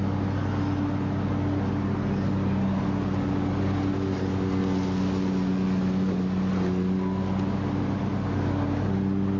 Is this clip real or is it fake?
real